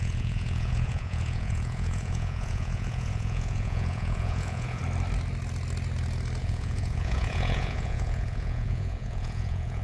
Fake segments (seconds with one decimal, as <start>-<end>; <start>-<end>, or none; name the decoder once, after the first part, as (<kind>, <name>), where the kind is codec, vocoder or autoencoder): 0.0-4.8 (vocoder, Vocos); 6.4-9.8